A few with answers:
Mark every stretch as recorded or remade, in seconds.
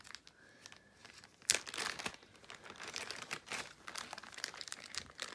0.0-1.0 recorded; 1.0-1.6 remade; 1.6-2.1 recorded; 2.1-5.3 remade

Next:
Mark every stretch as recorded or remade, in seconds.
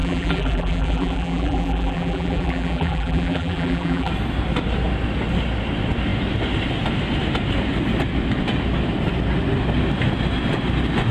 0.0-4.1 remade; 4.1-11.1 recorded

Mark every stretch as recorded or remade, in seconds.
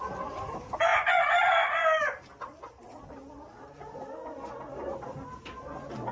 0.0-6.1 recorded